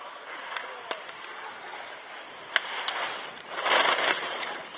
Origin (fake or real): real